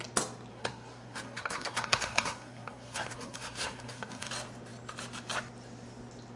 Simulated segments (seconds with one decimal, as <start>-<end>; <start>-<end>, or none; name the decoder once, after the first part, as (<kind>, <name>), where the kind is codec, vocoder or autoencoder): 0.5-4.3 (codec, SNAC)